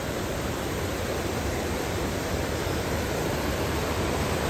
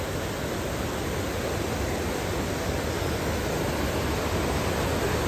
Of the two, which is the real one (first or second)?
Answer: second